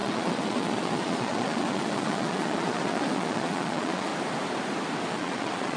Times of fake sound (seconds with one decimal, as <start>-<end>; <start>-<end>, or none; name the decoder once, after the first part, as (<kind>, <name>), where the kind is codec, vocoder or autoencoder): 0.0-4.1 (vocoder, Vocos); 5.1-5.8